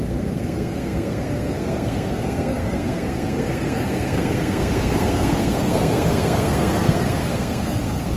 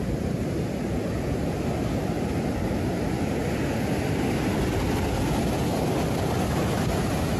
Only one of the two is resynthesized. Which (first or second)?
first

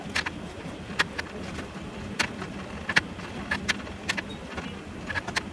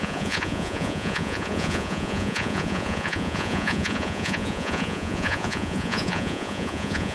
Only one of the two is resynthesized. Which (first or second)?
second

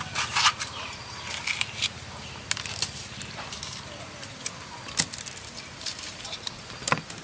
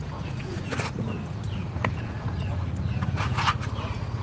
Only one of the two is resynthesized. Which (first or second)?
second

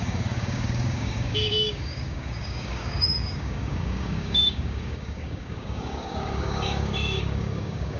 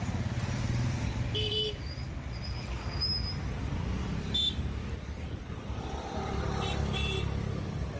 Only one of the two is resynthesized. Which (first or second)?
first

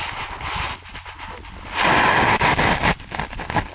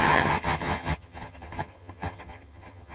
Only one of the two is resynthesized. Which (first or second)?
second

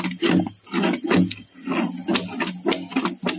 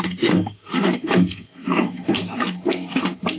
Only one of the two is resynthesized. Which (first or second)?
second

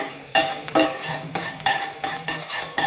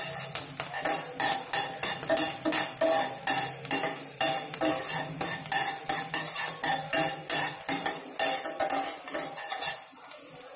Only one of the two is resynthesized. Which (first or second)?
first